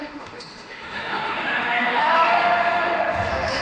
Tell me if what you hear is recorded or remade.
remade